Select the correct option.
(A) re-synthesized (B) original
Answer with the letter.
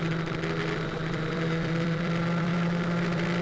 A